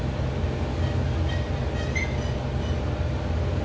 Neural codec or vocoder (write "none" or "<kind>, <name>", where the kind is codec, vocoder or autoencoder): none